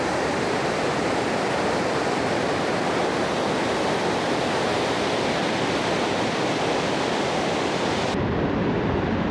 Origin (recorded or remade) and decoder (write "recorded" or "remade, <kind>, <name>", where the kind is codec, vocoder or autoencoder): recorded